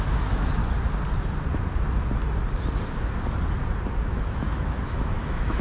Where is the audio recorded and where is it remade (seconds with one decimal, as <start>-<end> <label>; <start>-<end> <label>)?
0.0-0.6 remade; 0.6-4.0 recorded; 4.0-5.6 remade